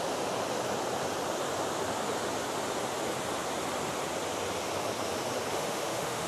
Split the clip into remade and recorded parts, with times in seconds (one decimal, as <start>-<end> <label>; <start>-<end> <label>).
0.0-5.5 recorded; 5.5-6.3 remade